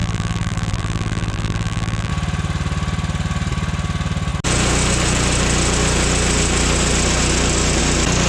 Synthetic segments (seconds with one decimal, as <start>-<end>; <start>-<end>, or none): 0.0-2.1

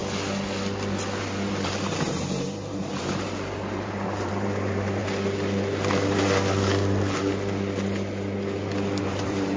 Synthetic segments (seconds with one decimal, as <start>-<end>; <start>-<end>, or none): 1.2-5.0; 9.0-9.6

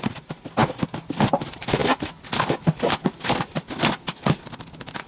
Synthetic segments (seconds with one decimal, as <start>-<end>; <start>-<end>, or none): none